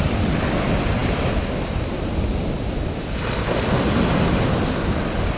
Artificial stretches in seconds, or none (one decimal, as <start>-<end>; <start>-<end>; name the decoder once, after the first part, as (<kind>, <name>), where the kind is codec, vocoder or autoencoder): none